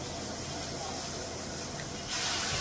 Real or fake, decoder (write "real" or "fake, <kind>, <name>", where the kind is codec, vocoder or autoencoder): real